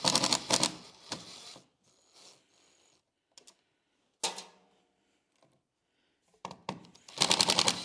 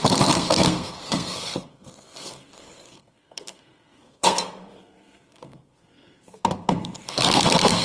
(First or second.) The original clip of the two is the first